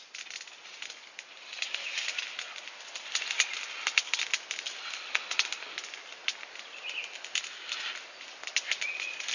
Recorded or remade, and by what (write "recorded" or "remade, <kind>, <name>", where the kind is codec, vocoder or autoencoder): recorded